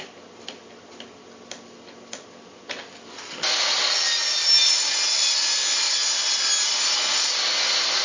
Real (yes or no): yes